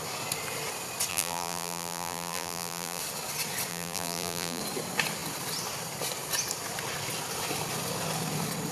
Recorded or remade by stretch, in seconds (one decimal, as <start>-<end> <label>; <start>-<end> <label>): 0.0-1.1 recorded; 1.1-3.0 remade; 3.0-3.7 recorded; 3.7-4.6 remade; 4.6-8.7 recorded